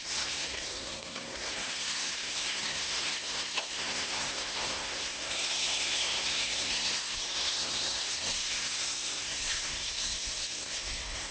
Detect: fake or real fake